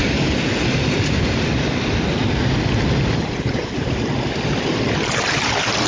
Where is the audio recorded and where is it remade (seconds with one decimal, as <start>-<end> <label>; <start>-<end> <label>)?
0.0-2.2 remade; 2.2-5.9 recorded

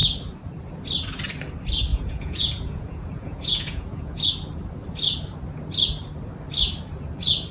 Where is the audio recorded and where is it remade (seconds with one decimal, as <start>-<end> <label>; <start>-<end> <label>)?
0.0-1.9 recorded; 1.9-4.3 remade; 4.3-7.5 recorded

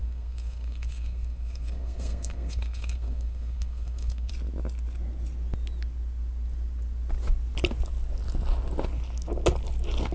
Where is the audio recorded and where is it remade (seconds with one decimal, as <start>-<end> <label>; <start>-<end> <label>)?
0.0-4.3 remade; 4.3-10.1 recorded

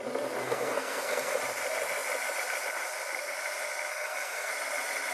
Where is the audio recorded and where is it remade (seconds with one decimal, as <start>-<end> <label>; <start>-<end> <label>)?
0.0-0.4 recorded; 0.4-1.4 remade; 1.4-3.9 recorded; 3.9-4.5 remade; 4.5-5.1 recorded

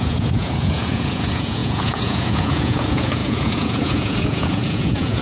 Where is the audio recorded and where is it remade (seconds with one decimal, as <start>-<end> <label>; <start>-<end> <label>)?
0.0-5.2 remade